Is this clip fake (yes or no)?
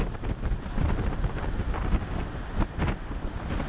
no